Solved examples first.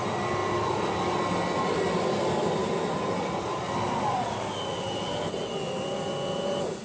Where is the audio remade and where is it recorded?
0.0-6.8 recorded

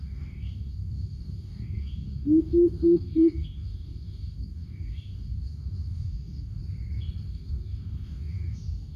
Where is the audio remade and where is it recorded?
0.0-6.6 remade; 6.6-7.3 recorded; 7.3-9.0 remade

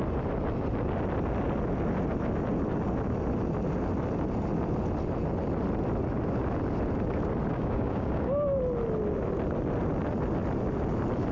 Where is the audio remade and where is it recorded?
0.0-7.5 recorded; 7.5-8.6 remade; 8.6-11.3 recorded

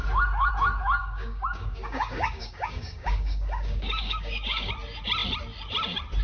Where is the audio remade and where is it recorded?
0.0-1.0 recorded; 1.0-4.7 remade; 4.7-6.2 recorded